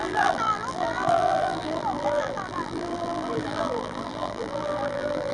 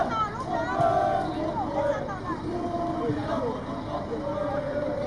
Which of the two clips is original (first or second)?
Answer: second